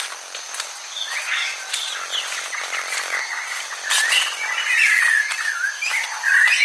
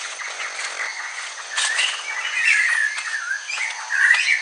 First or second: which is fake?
second